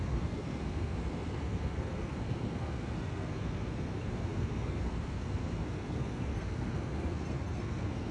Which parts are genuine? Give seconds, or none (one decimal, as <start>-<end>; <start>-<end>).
none